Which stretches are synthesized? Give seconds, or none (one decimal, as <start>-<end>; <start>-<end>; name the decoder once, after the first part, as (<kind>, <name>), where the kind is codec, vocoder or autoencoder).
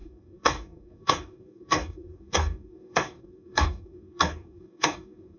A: 0.0-5.4 (codec, DAC)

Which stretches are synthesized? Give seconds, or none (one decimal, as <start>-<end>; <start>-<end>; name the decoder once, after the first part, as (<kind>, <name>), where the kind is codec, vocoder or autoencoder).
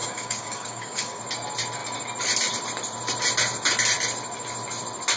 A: 0.0-1.2 (codec, DAC)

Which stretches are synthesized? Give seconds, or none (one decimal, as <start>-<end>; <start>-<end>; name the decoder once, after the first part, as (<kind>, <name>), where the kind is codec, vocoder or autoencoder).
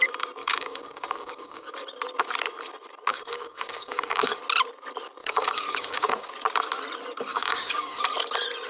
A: 0.4-1.7 (codec, DAC); 3.1-4.4; 5.2-6.3; 7.3-8.0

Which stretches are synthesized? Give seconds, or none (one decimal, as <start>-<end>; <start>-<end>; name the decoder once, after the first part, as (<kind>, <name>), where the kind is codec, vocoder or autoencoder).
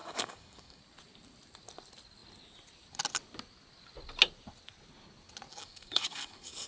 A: 0.0-0.8 (codec, DAC); 5.5-6.7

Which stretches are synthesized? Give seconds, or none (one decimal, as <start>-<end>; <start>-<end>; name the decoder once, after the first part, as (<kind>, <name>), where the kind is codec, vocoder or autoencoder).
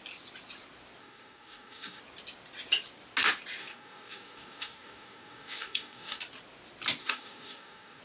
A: 1.0-2.0 (codec, DAC); 3.6-6.2; 7.0-8.0